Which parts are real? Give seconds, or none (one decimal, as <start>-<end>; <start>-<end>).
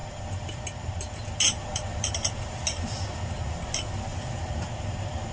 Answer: 3.2-4.1